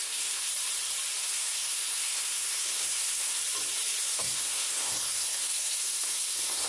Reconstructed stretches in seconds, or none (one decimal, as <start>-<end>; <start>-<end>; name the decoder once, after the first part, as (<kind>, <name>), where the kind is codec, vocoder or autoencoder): 0.0-0.5 (codec, SNAC); 1.2-3.4; 4.0-6.7